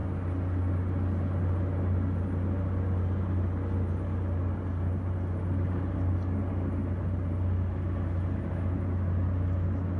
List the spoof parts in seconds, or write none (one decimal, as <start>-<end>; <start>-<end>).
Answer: none